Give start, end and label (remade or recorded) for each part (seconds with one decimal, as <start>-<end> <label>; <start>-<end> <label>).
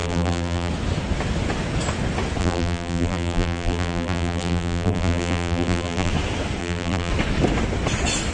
0.0-0.7 remade; 0.7-2.4 recorded; 2.4-6.1 remade; 6.1-6.6 recorded; 6.6-7.1 remade; 7.1-8.3 recorded